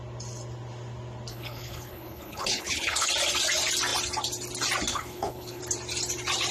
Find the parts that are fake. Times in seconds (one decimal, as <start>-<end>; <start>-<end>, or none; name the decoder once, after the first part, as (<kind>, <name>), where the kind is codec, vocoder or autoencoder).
1.3-3.1 (codec, HILCodec); 4.9-5.6